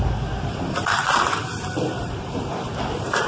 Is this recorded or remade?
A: recorded